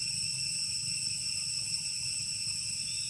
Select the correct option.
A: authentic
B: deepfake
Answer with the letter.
A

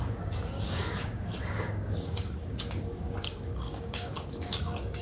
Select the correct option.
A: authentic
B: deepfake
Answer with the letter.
B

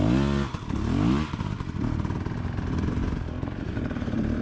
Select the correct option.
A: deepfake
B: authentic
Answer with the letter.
B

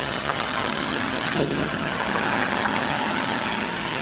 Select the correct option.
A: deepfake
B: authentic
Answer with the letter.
A